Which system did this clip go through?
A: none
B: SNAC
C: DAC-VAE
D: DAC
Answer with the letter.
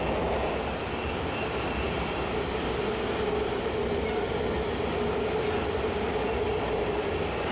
A